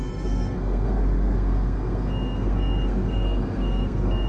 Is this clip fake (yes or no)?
yes